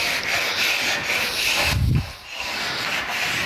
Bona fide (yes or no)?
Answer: yes